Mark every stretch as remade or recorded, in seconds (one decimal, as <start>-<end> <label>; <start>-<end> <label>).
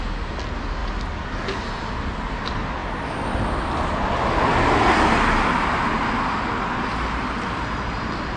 0.0-8.4 recorded